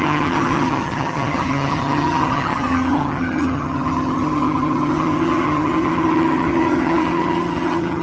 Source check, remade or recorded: remade